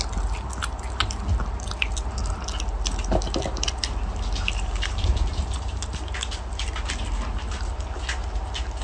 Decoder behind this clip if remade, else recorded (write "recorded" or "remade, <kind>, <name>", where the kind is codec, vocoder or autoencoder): recorded